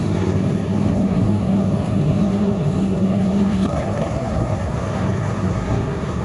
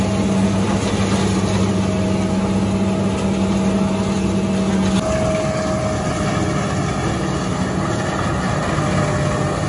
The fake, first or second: first